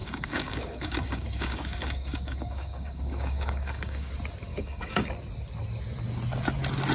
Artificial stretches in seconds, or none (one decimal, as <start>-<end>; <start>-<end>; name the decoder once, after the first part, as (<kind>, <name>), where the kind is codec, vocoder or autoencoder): 0.0-4.1 (codec, DAC); 4.5-5.1